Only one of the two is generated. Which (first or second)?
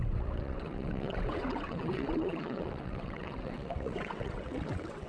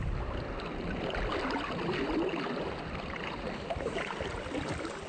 first